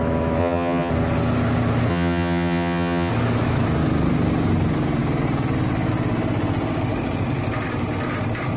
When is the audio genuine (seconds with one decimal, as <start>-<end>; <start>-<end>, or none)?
0.0-0.4; 0.9-1.9; 3.1-8.6